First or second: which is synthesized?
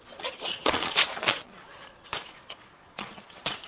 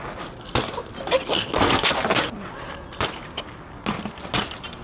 first